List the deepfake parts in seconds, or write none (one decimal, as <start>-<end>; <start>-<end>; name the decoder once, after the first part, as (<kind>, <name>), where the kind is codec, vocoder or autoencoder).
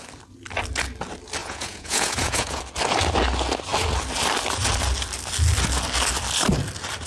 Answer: 1.4-2.6 (vocoder, Vocos)